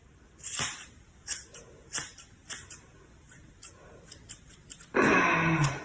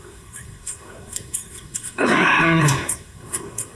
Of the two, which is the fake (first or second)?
second